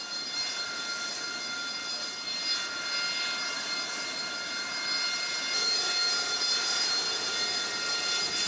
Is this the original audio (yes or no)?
yes